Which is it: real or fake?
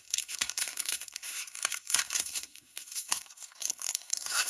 fake